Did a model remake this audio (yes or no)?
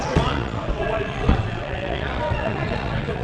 yes